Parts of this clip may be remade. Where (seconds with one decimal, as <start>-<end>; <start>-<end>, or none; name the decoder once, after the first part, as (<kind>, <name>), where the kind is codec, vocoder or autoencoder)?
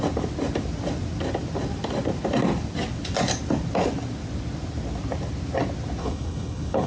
6.0-6.9 (codec, HILCodec)